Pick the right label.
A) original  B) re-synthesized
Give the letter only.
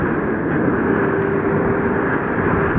A